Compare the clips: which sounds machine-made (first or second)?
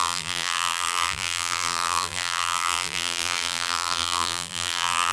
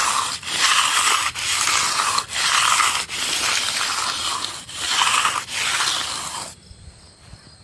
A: first